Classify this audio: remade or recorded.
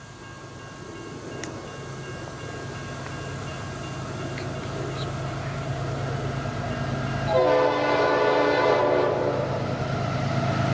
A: recorded